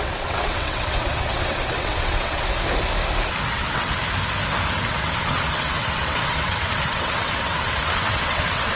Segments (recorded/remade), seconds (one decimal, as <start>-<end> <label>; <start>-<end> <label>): 0.0-2.5 remade; 2.5-3.5 recorded; 3.5-4.0 remade; 4.0-4.9 recorded; 4.9-8.8 remade